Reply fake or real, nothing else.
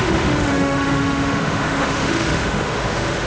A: fake